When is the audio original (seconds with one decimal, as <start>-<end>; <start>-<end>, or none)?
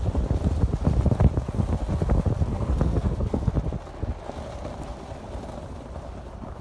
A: 0.0-2.5; 3.5-6.6